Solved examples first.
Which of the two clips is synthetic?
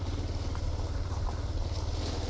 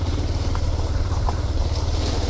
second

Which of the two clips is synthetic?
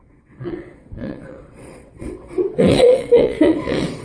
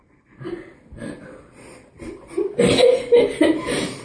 first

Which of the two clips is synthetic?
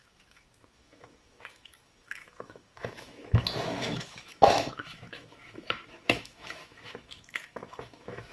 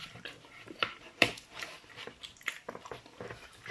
first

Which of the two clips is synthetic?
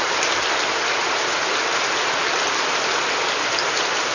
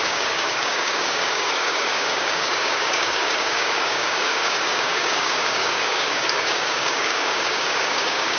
second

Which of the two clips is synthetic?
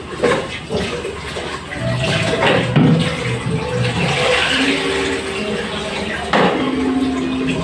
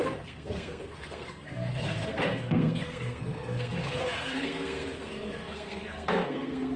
second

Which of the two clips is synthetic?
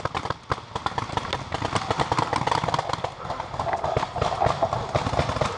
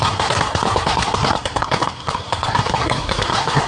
second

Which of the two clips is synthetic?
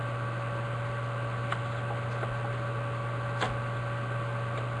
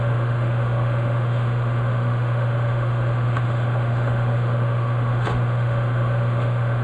second